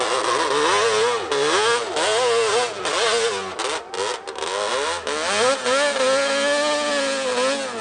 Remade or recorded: recorded